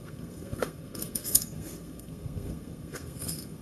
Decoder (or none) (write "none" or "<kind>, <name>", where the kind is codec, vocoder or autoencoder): codec, SNAC